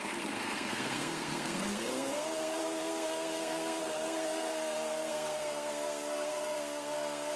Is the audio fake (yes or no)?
yes